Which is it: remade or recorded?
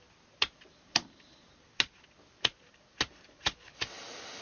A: recorded